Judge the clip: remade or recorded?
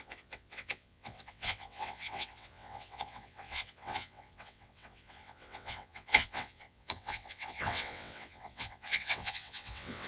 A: remade